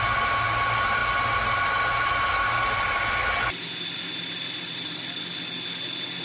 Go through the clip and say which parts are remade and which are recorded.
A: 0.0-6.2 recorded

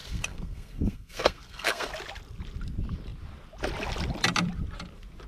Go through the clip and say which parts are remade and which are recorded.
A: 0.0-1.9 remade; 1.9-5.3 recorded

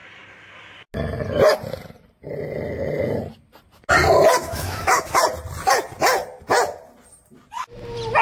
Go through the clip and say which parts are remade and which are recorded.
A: 0.0-4.4 recorded; 4.4-5.2 remade; 5.2-8.2 recorded

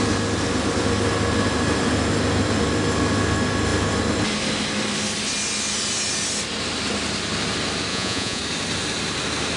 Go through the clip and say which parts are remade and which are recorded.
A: 0.0-7.9 recorded; 7.9-8.4 remade; 8.4-9.6 recorded

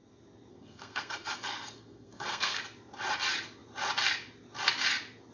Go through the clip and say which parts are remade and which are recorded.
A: 0.0-0.5 recorded; 0.5-2.6 remade; 2.6-5.3 recorded

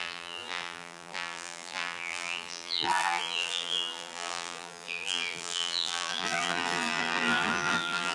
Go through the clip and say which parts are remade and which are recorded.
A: 0.0-8.1 remade